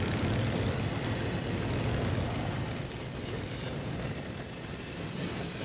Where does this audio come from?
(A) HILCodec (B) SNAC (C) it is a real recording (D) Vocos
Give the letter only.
C